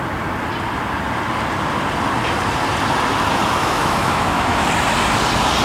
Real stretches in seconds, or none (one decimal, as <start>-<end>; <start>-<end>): 0.0-3.6; 4.7-5.6